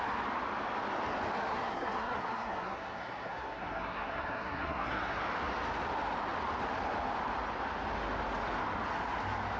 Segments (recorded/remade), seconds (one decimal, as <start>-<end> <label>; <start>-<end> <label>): 0.0-1.5 recorded; 1.5-5.2 remade; 5.2-9.6 recorded